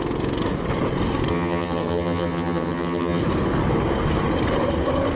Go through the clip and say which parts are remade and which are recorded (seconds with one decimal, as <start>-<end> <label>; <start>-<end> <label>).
0.0-1.3 recorded; 1.3-3.2 remade; 3.2-5.2 recorded